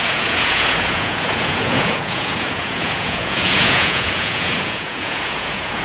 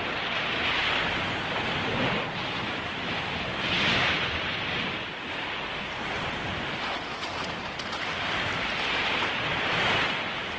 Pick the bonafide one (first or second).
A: second